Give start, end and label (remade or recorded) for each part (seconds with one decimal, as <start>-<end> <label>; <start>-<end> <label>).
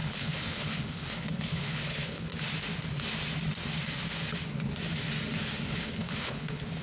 0.0-2.3 remade; 2.3-5.7 recorded; 5.7-6.8 remade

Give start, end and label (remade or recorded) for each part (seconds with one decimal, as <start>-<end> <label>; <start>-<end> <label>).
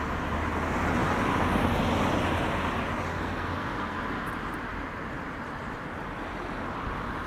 0.0-3.1 recorded; 3.1-4.0 remade; 4.0-7.3 recorded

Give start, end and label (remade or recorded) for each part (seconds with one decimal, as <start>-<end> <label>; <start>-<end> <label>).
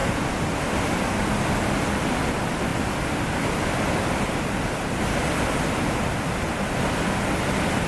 0.0-7.9 recorded